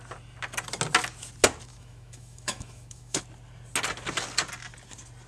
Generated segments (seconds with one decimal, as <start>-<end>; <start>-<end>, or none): 1.7-3.2